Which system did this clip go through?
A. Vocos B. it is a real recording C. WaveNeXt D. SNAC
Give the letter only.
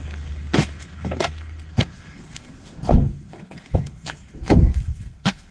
D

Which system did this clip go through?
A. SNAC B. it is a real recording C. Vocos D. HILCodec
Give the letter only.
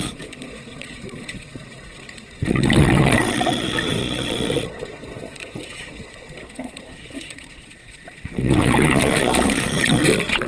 C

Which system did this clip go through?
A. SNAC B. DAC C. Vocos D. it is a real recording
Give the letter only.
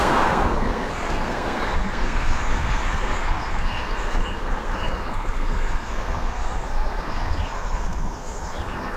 A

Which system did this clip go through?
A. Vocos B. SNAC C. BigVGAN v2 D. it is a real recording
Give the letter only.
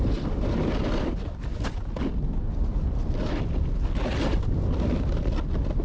D